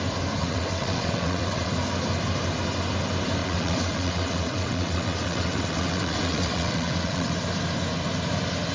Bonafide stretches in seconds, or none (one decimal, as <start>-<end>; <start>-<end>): 0.0-0.4; 1.7-3.4; 7.3-8.7